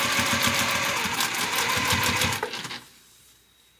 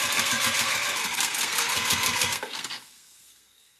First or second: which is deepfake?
second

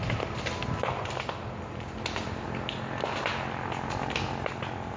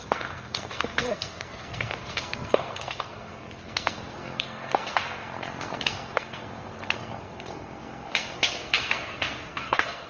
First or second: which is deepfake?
second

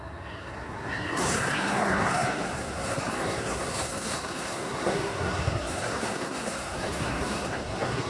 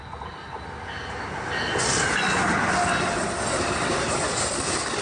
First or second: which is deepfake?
first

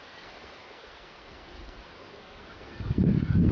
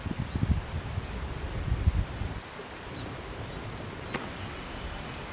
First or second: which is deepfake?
first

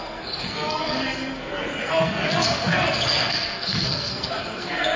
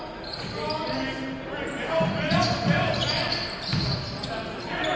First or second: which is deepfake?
first